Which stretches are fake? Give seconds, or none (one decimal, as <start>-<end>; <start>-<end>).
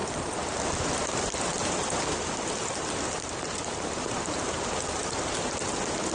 none